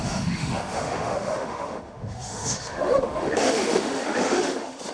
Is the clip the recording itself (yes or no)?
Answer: no